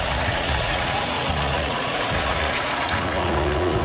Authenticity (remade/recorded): remade